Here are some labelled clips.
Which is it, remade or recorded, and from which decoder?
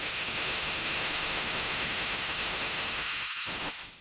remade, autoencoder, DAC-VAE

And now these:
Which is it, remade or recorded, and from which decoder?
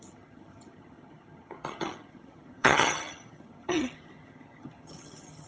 remade, vocoder, HiFi-GAN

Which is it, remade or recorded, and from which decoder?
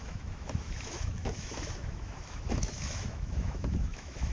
remade, autoencoder, DAC-VAE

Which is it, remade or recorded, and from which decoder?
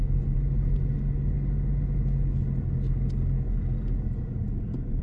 recorded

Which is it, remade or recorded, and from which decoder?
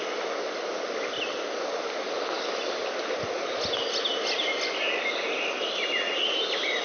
recorded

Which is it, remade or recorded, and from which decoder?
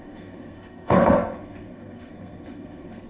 remade, codec, SNAC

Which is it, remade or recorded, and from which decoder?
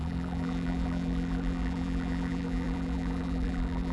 remade, vocoder, BigVGAN v2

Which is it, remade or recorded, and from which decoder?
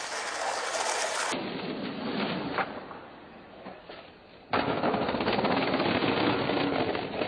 recorded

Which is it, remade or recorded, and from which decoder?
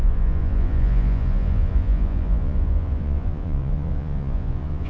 remade, vocoder, Vocos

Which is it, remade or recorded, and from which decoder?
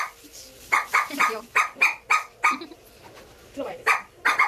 recorded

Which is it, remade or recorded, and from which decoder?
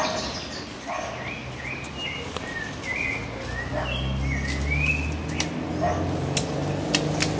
recorded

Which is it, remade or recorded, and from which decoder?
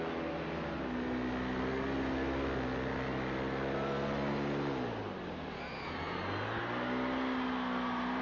recorded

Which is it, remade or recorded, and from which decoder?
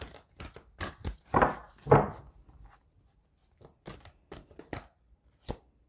recorded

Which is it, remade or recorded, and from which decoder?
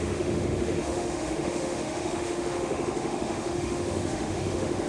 remade, autoencoder, DAC-VAE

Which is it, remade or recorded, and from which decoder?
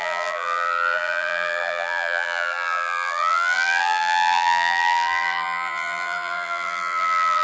remade, vocoder, BigVGAN v2